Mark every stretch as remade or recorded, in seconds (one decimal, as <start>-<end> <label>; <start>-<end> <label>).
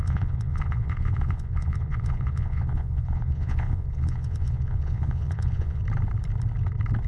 0.0-5.8 remade; 5.8-7.1 recorded